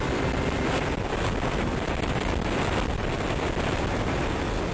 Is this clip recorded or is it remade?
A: recorded